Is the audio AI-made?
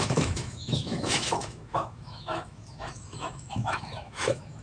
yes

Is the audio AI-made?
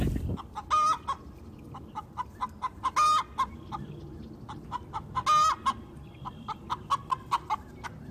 no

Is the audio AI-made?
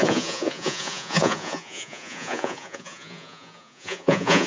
yes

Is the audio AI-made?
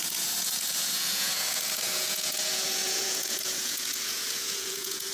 yes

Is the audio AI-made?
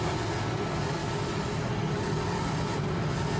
no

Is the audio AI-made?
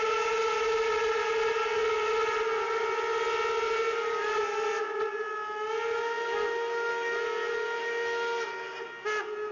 no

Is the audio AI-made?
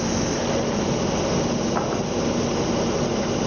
no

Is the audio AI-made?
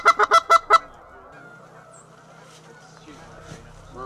no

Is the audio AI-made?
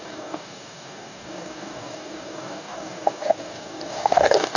yes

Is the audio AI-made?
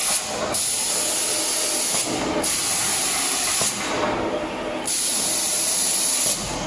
no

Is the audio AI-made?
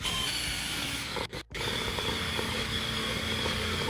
yes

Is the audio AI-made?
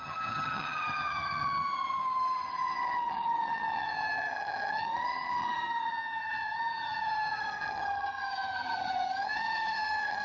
yes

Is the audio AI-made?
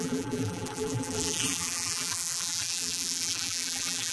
yes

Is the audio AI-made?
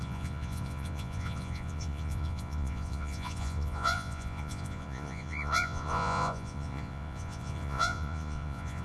yes